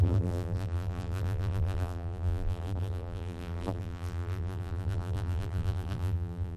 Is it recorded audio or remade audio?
remade